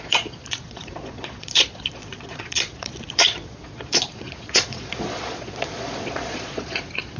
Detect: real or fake fake